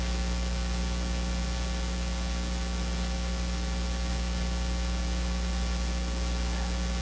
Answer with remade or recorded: recorded